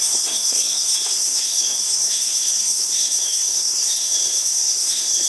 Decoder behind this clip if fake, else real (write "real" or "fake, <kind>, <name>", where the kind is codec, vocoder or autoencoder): fake, codec, SNAC